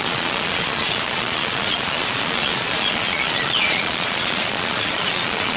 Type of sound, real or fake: fake